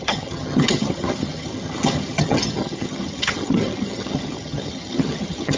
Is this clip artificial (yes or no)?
yes